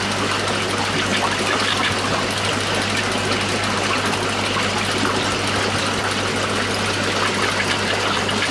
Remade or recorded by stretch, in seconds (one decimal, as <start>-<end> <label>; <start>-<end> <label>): 0.0-8.5 recorded